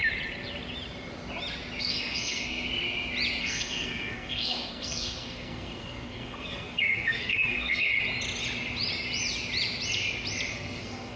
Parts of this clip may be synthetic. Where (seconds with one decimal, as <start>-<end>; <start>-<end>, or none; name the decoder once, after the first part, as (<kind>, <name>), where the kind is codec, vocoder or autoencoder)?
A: 1.8-2.7 (codec, SNAC); 3.4-7.9; 10.5-11.2